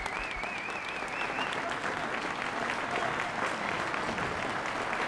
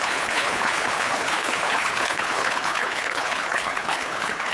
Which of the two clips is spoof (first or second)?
second